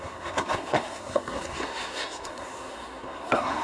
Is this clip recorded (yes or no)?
no